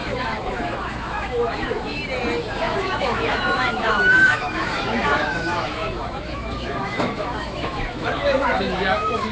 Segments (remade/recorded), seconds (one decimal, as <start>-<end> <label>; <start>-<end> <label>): 0.0-2.0 remade; 2.0-2.5 recorded; 2.5-9.3 remade